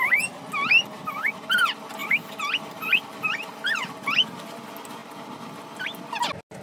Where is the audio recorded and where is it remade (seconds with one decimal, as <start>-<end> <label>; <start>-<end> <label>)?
0.0-6.6 recorded